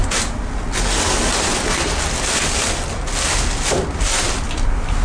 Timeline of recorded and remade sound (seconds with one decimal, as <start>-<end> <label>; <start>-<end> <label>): 0.0-5.0 recorded